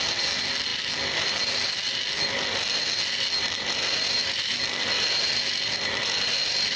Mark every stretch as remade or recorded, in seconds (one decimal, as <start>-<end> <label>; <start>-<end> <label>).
0.0-6.8 recorded